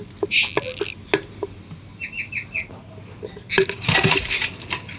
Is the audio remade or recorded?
recorded